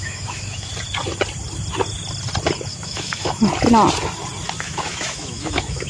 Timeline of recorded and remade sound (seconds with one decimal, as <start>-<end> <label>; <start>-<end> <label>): 0.0-0.7 remade; 0.7-2.7 recorded; 2.7-3.4 remade; 3.4-4.6 recorded; 4.6-5.9 remade